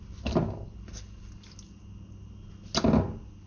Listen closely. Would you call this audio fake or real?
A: real